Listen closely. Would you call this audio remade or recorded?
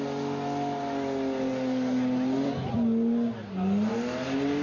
recorded